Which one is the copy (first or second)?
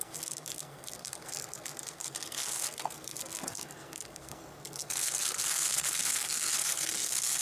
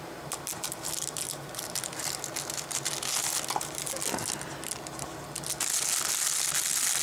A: first